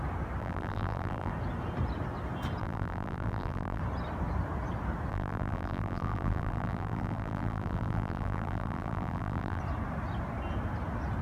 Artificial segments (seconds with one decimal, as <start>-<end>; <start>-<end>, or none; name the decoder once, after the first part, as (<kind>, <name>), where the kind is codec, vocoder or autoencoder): 0.4-1.3 (vocoder, BigVGAN v2); 2.6-3.8; 5.1-9.6